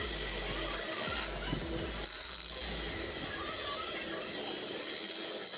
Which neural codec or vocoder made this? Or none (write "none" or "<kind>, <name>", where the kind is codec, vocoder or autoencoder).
none